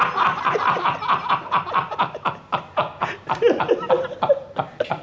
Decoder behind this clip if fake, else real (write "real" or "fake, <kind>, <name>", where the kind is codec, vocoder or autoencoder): real